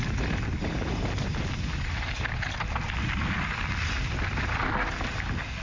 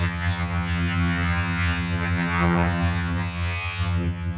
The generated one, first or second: second